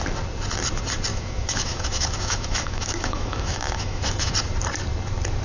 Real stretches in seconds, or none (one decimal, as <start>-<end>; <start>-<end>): 0.0-1.1; 4.3-5.4